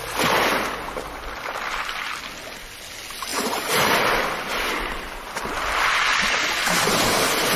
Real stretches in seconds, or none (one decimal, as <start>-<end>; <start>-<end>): 0.0-3.3; 3.9-7.6